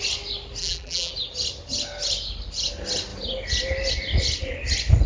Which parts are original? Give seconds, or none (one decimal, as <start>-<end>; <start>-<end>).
0.0-0.6; 1.1-5.1